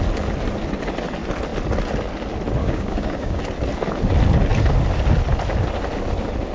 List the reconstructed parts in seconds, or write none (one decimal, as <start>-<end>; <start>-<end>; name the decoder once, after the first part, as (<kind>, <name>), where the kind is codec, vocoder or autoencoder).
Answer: 2.6-3.4 (codec, DAC)

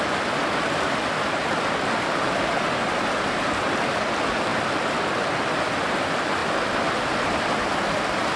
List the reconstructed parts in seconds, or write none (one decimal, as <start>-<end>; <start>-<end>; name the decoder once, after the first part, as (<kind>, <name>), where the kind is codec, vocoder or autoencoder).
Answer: none

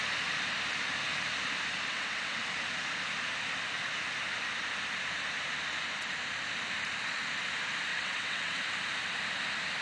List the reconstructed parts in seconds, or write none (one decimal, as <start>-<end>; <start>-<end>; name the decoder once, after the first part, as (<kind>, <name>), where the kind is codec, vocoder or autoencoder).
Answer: 1.9-2.5 (vocoder, WaveNeXt); 7.9-8.6